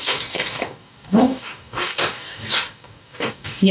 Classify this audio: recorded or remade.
remade